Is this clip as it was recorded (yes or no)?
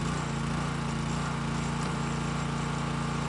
yes